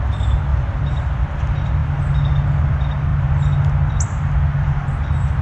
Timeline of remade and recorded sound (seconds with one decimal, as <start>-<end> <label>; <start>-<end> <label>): 0.0-5.4 recorded